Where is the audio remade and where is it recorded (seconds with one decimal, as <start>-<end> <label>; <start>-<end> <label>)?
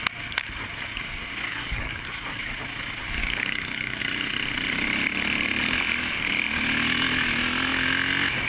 0.0-1.5 recorded; 1.5-2.1 remade; 2.1-3.2 recorded; 3.2-4.0 remade; 4.0-8.5 recorded